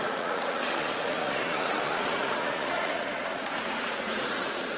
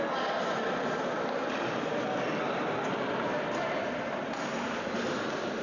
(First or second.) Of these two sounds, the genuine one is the second